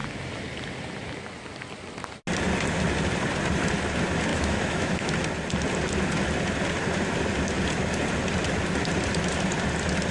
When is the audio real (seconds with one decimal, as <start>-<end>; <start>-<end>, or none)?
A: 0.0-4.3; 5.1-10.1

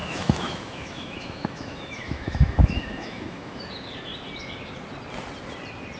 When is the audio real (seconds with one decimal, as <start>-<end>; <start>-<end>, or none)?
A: 3.6-6.0

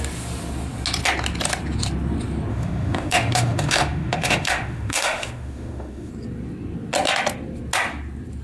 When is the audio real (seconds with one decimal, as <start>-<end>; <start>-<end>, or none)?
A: 0.0-2.5; 6.1-8.4

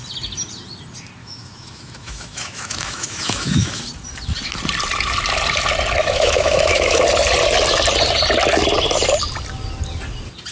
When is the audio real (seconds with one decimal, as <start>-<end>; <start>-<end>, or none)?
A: 0.0-1.2; 3.8-6.0; 7.0-10.5

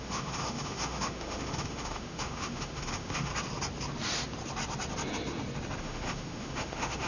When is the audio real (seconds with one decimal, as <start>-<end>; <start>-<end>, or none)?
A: 3.3-5.8